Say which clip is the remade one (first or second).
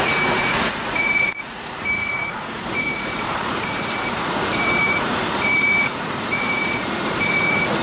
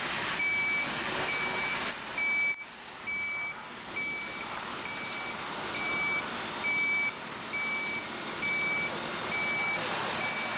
first